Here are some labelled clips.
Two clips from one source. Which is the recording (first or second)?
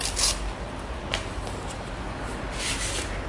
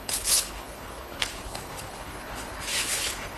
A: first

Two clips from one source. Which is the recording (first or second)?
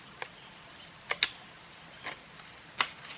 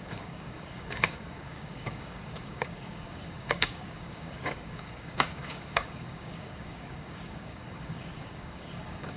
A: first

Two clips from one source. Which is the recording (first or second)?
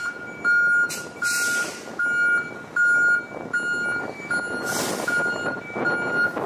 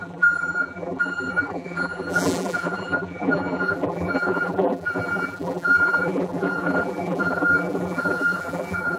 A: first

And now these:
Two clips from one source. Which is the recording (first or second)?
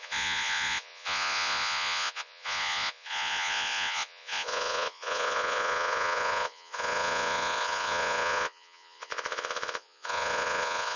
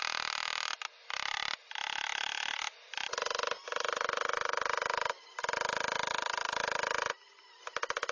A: second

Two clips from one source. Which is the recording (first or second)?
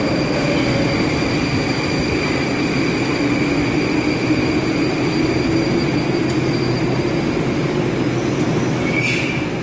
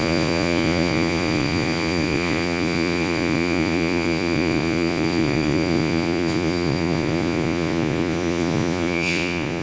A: first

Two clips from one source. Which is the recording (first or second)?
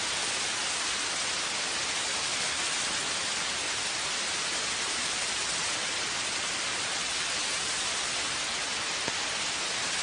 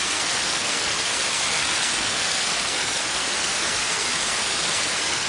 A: first